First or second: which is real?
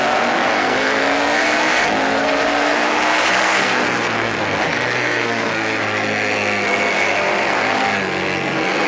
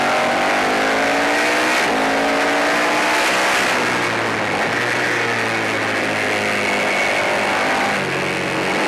second